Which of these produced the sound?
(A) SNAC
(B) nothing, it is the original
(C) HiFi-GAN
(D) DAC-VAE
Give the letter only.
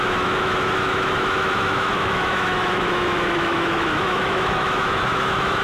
D